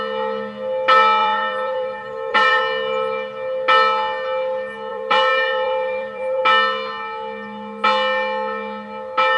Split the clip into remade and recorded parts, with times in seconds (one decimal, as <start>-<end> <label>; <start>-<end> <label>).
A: 0.0-1.2 recorded; 1.2-2.6 remade; 2.6-4.9 recorded; 4.9-6.4 remade; 6.4-9.4 recorded